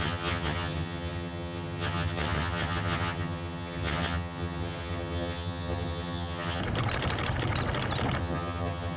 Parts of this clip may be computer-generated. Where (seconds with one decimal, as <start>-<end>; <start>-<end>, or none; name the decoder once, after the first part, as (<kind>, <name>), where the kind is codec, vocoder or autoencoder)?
0.0-6.6 (vocoder, HiFi-GAN); 8.2-9.0

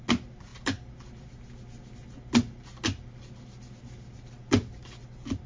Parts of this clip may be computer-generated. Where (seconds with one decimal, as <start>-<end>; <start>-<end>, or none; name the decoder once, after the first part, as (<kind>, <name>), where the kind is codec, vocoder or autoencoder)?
none

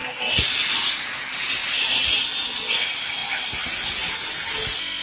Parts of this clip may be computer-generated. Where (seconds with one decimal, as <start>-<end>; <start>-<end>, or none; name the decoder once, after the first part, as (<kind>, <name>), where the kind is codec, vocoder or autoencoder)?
none

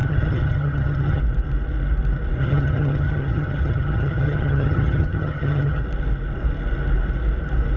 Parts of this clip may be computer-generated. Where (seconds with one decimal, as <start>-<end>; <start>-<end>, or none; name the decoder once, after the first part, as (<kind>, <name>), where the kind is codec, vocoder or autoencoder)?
0.0-1.2 (vocoder, HiFi-GAN); 2.4-5.8

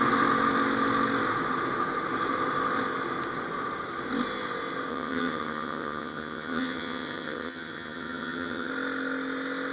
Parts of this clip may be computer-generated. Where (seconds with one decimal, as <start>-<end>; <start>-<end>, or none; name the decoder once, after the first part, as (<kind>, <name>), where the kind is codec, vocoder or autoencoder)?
4.9-8.7 (vocoder, HiFi-GAN)